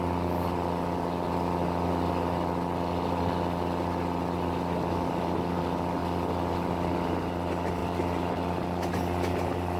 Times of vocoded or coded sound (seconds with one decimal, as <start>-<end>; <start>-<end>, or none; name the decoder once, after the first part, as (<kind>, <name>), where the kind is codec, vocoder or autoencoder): none